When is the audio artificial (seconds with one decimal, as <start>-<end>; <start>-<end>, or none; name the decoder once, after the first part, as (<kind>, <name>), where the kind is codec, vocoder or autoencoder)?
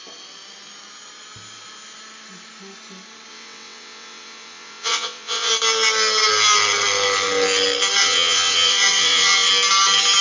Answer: 3.3-5.5 (vocoder, WaveNeXt); 8.0-9.5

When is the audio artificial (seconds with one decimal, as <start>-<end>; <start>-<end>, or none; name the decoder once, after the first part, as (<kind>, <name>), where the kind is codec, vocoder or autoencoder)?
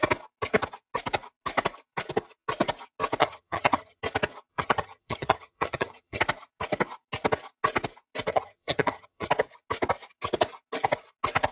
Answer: 3.2-4.0 (vocoder, HiFi-GAN); 4.5-6.2; 8.3-9.3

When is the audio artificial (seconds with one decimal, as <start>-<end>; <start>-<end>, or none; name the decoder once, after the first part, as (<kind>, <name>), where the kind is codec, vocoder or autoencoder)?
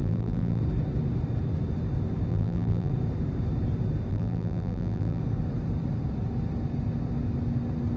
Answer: 0.0-0.6 (vocoder, BigVGAN v2); 2.3-2.9; 4.1-5.2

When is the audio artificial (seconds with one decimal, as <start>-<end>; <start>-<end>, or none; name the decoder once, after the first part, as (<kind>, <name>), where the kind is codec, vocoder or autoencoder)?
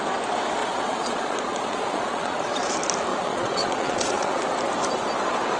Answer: 0.6-2.4 (vocoder, Vocos); 3.1-4.4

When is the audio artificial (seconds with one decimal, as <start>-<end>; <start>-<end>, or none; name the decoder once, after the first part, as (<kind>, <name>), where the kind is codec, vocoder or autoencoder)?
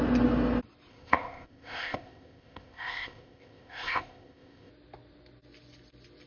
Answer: 0.9-4.7 (codec, ZipCodec)